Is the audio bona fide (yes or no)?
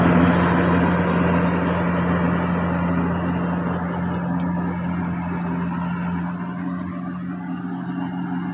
yes